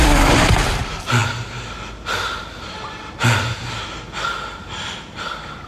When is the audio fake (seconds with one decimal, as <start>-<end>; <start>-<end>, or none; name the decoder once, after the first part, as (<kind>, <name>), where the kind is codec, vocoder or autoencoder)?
none